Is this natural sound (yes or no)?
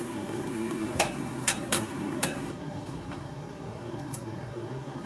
no